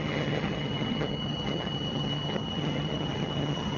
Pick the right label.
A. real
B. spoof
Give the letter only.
B